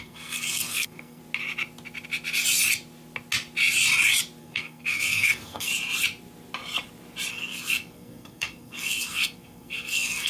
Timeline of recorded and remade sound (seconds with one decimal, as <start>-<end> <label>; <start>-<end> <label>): 0.0-1.2 remade; 1.2-4.4 recorded; 4.4-5.7 remade; 5.7-7.3 recorded; 7.3-10.3 remade

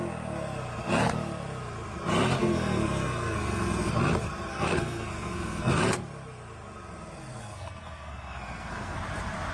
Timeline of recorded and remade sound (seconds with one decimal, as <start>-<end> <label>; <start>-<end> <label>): 0.0-2.4 recorded; 2.4-3.9 remade; 3.9-4.5 recorded; 4.5-5.8 remade; 5.8-7.4 recorded; 7.4-9.0 remade; 9.0-9.5 recorded

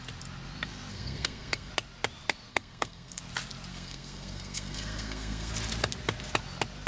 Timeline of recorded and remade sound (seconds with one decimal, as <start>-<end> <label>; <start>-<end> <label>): 0.0-0.9 recorded; 0.9-1.7 remade; 1.7-2.5 recorded; 2.5-3.2 remade; 3.2-3.7 recorded; 3.7-5.5 remade; 5.5-6.9 recorded

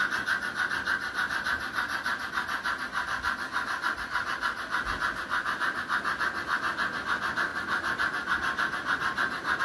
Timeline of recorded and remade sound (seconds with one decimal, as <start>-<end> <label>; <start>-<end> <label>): 0.0-9.6 recorded

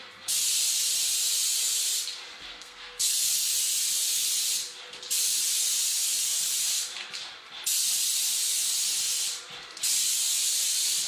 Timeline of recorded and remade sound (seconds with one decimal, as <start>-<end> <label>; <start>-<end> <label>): 0.0-2.5 recorded; 2.5-3.3 remade; 3.3-11.1 recorded

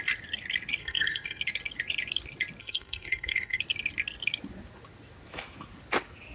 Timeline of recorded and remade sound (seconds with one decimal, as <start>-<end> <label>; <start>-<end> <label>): 0.0-0.8 recorded; 0.8-1.4 remade; 1.4-2.6 recorded; 2.6-3.6 remade; 3.6-6.3 recorded

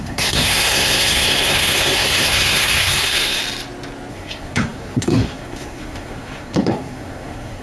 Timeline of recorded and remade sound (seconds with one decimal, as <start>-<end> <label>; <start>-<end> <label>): 0.0-3.4 remade; 3.4-4.1 recorded; 4.1-7.6 remade

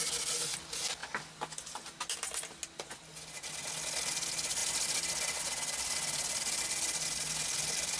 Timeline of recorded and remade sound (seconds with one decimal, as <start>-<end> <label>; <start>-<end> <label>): 0.0-8.0 recorded